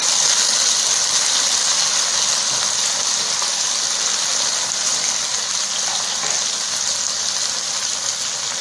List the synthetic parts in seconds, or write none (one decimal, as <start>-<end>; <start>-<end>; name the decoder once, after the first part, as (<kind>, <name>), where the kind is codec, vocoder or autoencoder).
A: none